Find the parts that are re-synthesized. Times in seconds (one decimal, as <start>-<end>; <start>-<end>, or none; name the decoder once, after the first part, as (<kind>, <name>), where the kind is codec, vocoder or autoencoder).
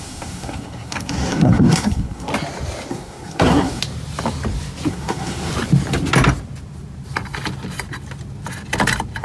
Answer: 0.0-2.3 (codec, SNAC); 2.9-3.8; 4.9-5.5